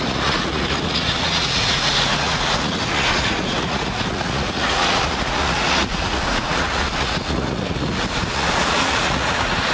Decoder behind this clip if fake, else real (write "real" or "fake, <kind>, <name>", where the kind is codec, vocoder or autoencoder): fake, vocoder, Vocos